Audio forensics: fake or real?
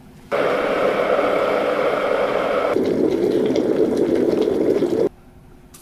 real